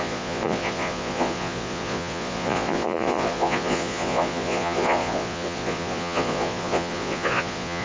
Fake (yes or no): yes